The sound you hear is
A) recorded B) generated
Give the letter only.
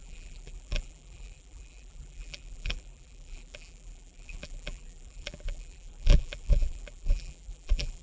B